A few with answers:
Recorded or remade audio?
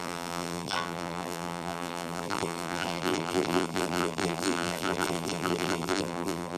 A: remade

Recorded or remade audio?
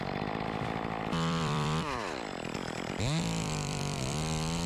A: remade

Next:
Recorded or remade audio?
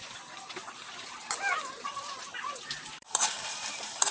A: remade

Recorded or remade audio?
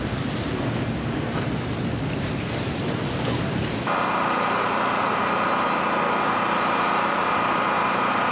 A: recorded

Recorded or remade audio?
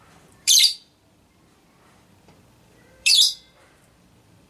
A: remade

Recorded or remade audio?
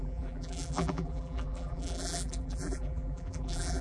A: remade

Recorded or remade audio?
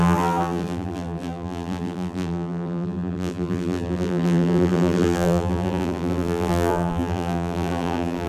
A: remade